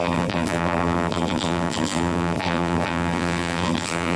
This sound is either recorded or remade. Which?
remade